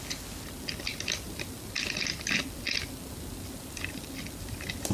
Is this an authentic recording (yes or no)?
yes